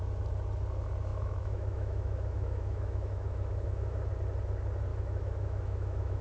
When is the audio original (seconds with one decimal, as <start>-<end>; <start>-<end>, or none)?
0.0-1.1; 4.0-4.9